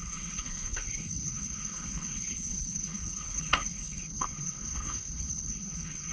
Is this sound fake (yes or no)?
yes